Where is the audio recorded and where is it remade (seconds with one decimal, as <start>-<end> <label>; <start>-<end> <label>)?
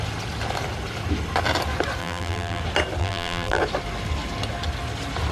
0.0-2.0 recorded; 2.0-2.6 remade; 2.6-3.0 recorded; 3.0-3.6 remade; 3.6-5.3 recorded